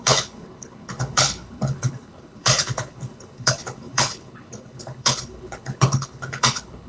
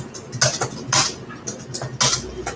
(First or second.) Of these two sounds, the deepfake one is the first